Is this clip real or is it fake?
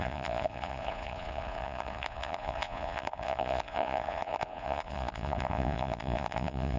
fake